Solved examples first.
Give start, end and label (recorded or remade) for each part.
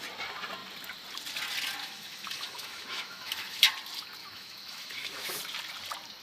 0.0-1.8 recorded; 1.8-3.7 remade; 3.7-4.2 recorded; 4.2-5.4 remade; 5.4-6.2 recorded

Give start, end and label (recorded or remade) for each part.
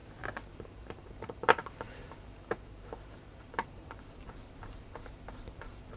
0.0-0.5 recorded; 0.5-6.0 remade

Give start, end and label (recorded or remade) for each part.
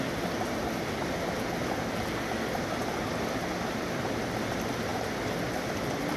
0.0-6.2 recorded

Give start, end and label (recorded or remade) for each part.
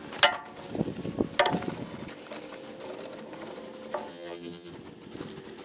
0.0-4.1 recorded; 4.1-4.7 remade; 4.7-5.6 recorded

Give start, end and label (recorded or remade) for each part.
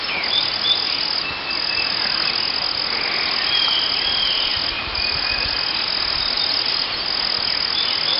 0.0-8.2 recorded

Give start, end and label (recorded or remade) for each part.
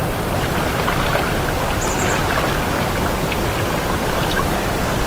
0.0-1.1 remade; 1.1-2.6 recorded; 2.6-5.1 remade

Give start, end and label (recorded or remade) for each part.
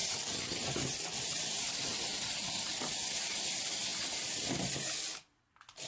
0.0-5.9 recorded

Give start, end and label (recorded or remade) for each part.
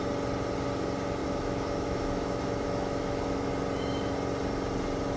0.0-1.2 recorded; 1.2-3.5 remade; 3.5-5.2 recorded